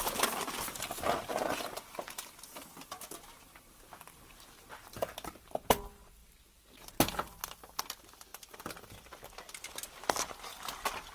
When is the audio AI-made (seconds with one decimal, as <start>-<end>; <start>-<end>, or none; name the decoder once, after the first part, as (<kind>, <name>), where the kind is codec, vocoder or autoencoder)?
none